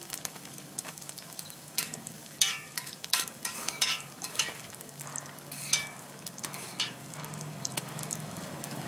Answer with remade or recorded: remade